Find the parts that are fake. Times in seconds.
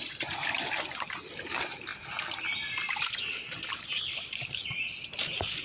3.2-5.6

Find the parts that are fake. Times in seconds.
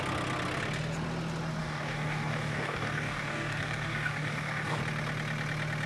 1.6-4.8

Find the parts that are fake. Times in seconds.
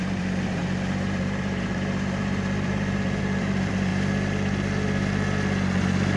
0.0-3.9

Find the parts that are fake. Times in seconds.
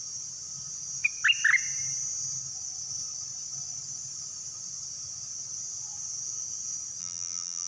7.0-7.7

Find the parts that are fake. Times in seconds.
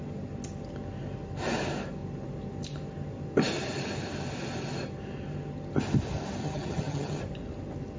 6.4-7.2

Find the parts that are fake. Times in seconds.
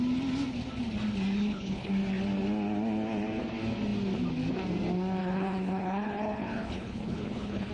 1.4-1.9; 5.2-7.7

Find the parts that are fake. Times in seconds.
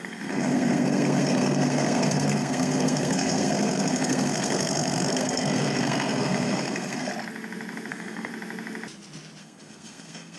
0.0-7.1; 7.9-8.3; 9.4-10.4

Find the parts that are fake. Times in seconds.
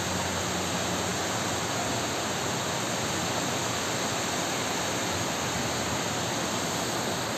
none